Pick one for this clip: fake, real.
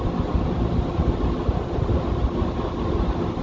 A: real